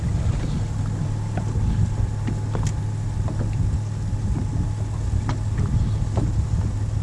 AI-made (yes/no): no